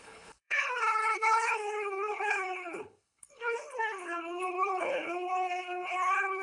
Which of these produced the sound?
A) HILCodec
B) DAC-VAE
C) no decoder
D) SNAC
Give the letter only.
A